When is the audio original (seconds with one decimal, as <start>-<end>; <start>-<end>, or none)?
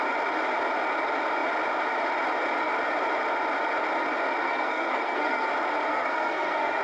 0.0-4.4; 5.5-5.9